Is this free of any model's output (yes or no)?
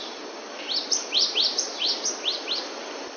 yes